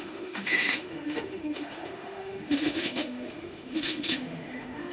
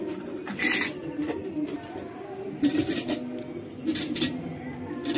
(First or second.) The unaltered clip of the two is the second